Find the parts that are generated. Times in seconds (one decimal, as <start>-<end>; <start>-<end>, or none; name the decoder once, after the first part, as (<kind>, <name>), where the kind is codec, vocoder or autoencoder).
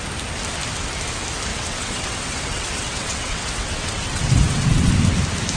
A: 1.5-4.9 (vocoder, WaveNeXt)